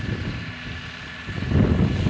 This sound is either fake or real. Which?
real